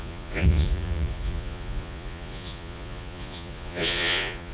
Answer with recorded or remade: remade